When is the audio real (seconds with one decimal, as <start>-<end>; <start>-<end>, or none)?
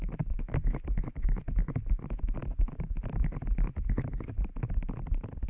0.0-5.5